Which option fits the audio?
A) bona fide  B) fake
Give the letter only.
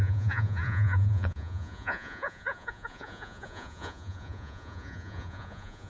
B